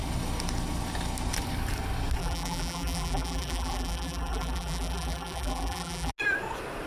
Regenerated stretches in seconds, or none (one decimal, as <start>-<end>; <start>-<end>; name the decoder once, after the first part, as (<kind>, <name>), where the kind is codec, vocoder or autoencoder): 2.2-6.1 (vocoder, BigVGAN v2)